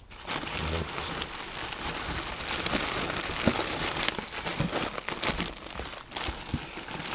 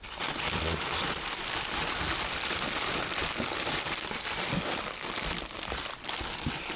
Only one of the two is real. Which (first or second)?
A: first